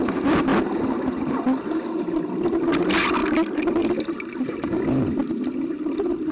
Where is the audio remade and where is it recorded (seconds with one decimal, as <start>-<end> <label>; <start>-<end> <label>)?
0.0-6.3 recorded